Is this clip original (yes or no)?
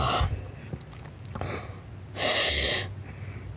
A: yes